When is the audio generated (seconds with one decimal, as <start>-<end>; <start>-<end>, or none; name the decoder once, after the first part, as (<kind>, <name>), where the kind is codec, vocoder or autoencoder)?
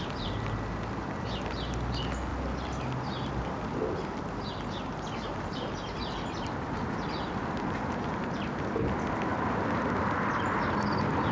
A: none